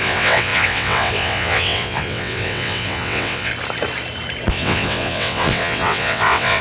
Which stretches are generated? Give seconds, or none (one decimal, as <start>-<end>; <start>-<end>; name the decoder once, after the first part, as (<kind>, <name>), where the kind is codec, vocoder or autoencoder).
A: 0.0-3.5 (vocoder, WaveNeXt); 4.5-6.6